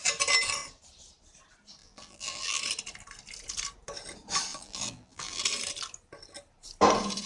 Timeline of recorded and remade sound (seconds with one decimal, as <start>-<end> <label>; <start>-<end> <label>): 0.0-1.8 recorded; 1.8-2.6 remade; 2.6-4.5 recorded; 4.5-5.4 remade; 5.4-7.3 recorded